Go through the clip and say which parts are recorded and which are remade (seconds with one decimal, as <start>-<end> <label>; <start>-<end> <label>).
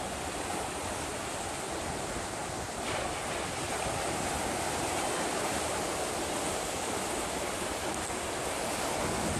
0.0-9.4 recorded